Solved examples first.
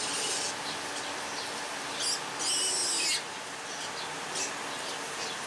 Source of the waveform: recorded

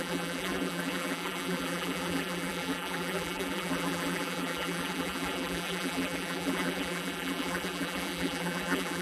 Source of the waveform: remade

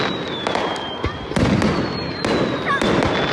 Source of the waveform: recorded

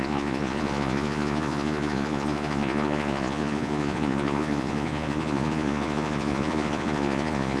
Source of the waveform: remade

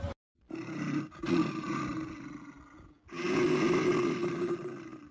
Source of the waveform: recorded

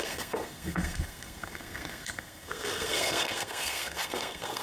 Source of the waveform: remade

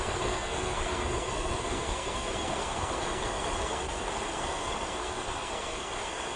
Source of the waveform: remade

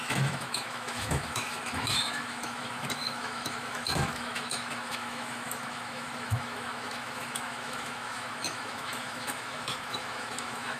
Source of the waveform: remade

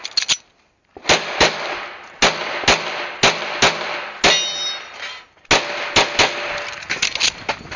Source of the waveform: recorded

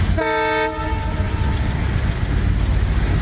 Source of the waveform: recorded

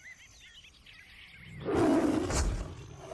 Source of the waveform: recorded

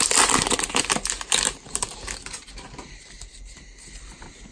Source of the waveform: recorded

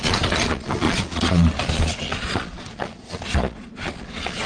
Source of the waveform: remade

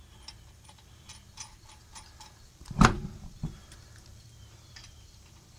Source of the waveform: remade